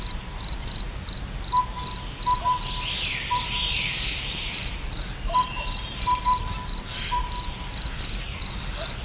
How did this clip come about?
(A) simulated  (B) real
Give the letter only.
B